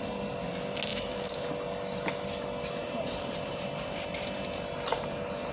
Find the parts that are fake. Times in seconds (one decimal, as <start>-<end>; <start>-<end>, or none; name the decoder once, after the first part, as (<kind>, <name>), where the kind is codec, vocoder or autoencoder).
0.9-1.5 (vocoder, BigVGAN v2); 2.8-3.7; 4.9-5.5